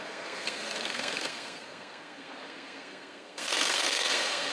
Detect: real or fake fake